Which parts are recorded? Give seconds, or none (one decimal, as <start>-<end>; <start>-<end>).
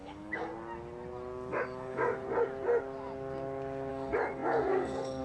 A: 0.5-1.5; 2.1-3.9